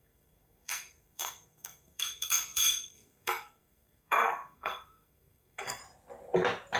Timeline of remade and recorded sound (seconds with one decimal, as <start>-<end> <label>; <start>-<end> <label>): 0.0-5.8 remade; 5.8-6.8 recorded